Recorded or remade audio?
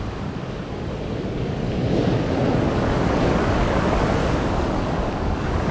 remade